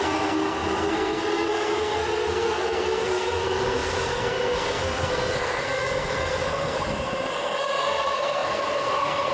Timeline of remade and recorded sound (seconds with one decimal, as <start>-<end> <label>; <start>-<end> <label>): 0.0-9.3 remade